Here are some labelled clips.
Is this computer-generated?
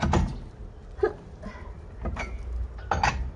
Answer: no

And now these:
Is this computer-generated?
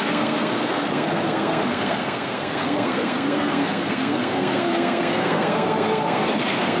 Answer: yes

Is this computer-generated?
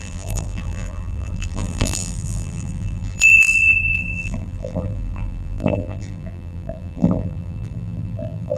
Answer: yes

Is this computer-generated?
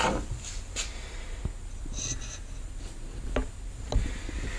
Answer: no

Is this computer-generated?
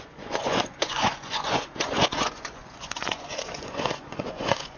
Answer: yes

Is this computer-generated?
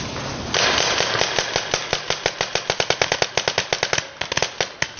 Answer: no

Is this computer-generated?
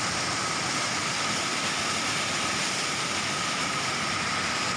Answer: no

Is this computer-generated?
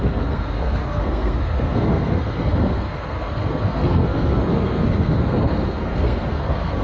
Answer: yes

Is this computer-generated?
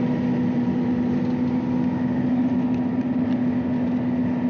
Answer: no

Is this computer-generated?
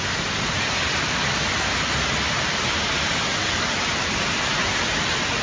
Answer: no